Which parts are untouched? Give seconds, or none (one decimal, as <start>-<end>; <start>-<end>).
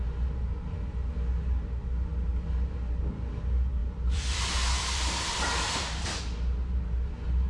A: 0.0-3.8; 6.2-7.5